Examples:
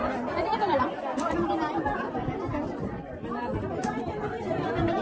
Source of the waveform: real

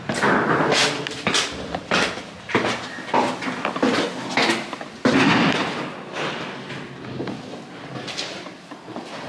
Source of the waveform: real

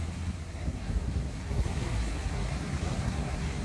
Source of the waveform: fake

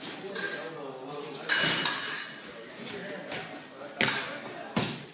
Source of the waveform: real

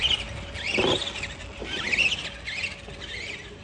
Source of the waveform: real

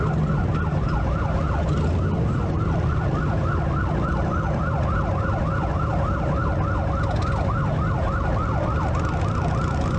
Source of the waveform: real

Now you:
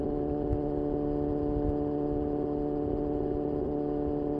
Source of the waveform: real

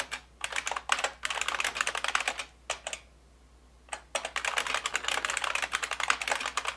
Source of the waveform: real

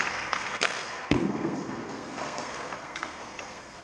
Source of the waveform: fake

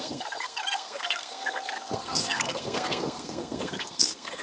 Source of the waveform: fake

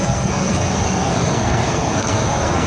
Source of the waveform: fake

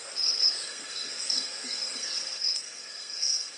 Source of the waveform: fake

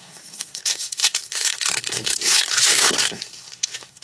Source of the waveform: fake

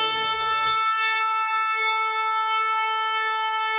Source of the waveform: fake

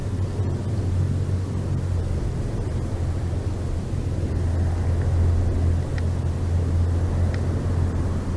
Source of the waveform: real